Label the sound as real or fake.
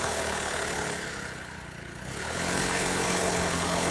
fake